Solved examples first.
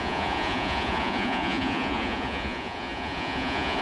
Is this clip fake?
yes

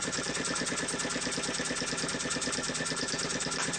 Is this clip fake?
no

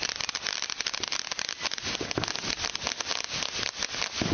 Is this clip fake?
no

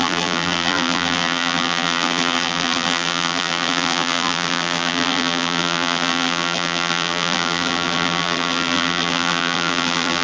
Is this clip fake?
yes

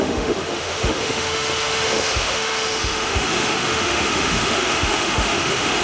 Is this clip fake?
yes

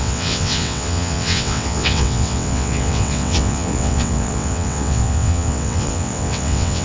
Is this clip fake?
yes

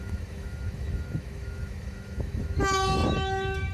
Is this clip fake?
yes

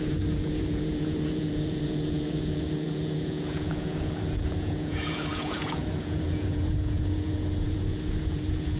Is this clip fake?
yes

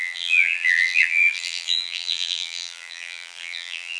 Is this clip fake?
yes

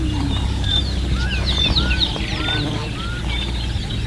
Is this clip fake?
no